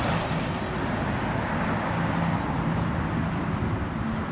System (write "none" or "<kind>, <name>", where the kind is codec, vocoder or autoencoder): none